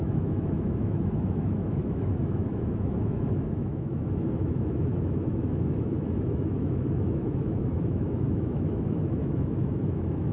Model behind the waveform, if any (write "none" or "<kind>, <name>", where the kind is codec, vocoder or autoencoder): autoencoder, DAC-VAE